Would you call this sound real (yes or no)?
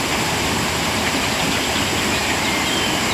no